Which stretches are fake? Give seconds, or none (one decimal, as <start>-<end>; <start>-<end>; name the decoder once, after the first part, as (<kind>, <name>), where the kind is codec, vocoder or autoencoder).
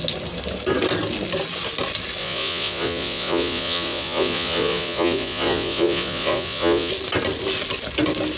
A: 2.2-6.9 (vocoder, Vocos)